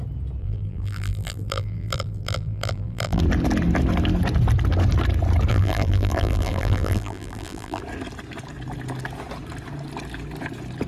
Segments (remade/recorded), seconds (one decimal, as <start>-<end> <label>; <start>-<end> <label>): 0.0-0.4 recorded; 0.4-3.2 remade; 3.2-5.5 recorded; 5.5-7.8 remade; 7.8-10.9 recorded